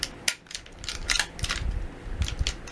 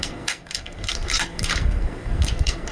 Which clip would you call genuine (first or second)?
first